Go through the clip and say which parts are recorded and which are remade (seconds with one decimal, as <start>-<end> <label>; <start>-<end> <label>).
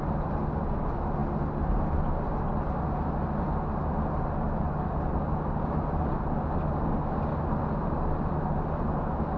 0.0-9.4 recorded